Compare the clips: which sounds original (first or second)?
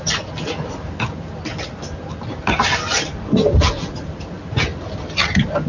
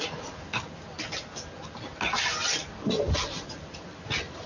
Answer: second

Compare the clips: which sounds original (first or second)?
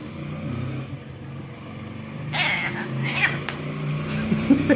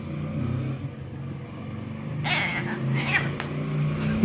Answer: second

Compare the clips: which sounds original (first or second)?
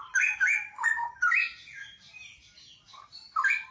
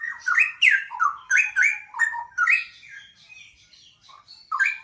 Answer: first